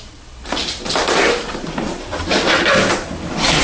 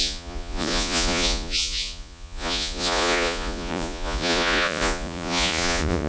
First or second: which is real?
first